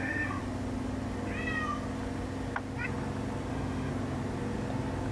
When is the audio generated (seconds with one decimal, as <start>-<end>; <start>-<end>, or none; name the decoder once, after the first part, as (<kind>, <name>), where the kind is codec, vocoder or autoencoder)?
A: 0.0-0.4 (autoencoder, DAC-VAE); 3.5-3.9